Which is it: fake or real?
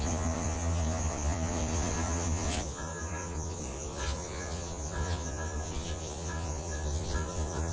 fake